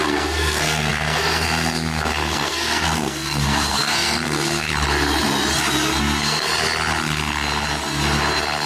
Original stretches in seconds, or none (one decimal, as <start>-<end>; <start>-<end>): 4.7-6.0; 6.5-8.7